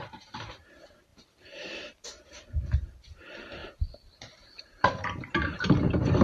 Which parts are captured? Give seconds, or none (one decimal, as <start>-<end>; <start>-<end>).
3.6-4.6